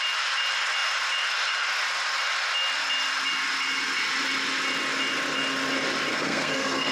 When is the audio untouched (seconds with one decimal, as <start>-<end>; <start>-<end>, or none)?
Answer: 0.0-6.1